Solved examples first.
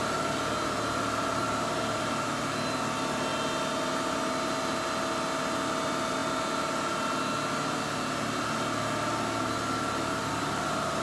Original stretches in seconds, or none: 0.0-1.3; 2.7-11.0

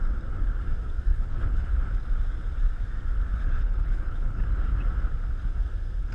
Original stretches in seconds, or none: 0.0-1.1; 1.8-3.3; 4.4-6.1

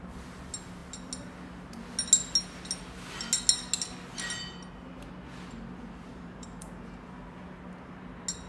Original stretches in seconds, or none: 0.0-6.1; 6.7-8.5

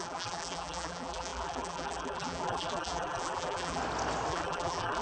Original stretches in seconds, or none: 3.8-4.3

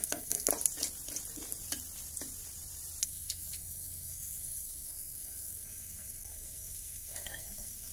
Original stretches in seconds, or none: 0.5-3.0

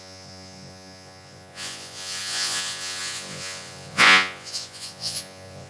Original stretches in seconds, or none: none

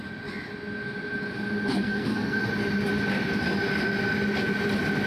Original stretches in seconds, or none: 0.0-1.7; 2.4-5.1